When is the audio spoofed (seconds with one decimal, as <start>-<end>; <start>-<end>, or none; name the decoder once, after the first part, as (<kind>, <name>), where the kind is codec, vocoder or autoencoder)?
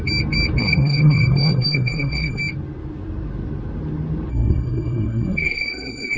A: 0.6-2.4 (codec, SNAC); 4.3-6.2